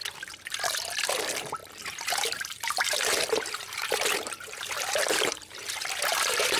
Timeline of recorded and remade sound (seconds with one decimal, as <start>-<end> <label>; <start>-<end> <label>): 0.0-1.2 recorded; 1.2-6.6 remade